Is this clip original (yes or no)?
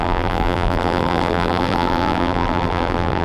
no